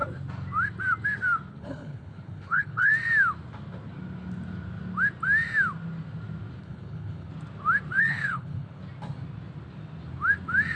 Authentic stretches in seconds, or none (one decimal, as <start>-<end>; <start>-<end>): 0.0-1.5; 2.9-6.6; 7.3-8.0; 8.8-10.8